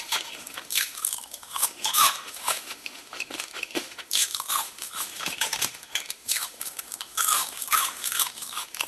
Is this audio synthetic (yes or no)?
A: yes